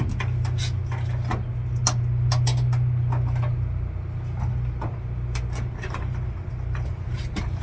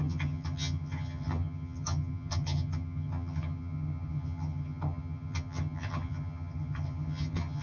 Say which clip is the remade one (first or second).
second